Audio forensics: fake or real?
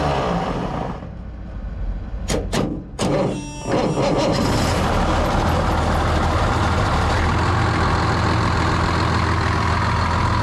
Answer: real